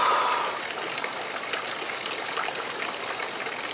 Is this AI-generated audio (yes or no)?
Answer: no